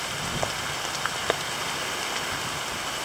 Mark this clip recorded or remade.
recorded